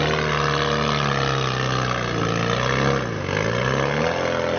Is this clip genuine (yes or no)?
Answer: yes